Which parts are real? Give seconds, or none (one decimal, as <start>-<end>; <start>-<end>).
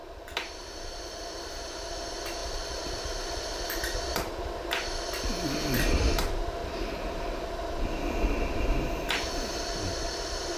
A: 1.0-2.4; 4.4-6.6; 7.6-10.6